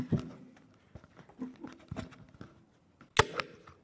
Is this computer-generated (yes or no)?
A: no